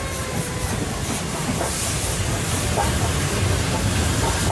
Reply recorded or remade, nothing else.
recorded